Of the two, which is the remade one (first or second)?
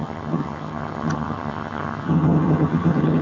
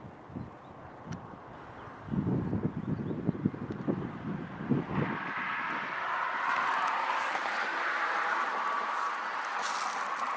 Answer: first